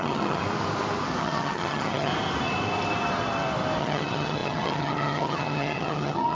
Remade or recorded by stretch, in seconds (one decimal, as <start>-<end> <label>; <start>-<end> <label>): 0.0-0.4 remade; 0.4-1.2 recorded; 1.2-2.1 remade; 2.1-3.8 recorded; 3.8-6.3 remade